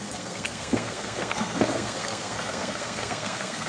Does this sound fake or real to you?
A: fake